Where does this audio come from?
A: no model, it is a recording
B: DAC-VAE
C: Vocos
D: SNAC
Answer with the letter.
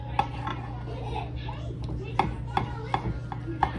A